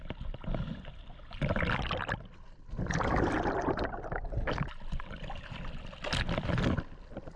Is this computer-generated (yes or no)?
no